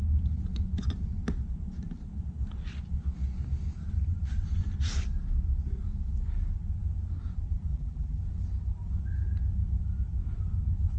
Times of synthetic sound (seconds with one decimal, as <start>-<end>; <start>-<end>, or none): 7.7-8.2